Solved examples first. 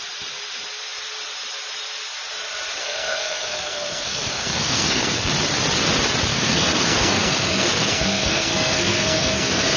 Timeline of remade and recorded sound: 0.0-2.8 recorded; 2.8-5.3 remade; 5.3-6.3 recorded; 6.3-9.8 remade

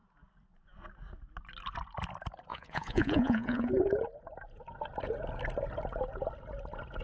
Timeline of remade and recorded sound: 0.0-2.5 recorded; 2.5-3.7 remade; 3.7-7.0 recorded

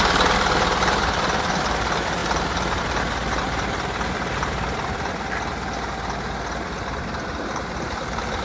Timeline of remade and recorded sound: 0.0-8.4 recorded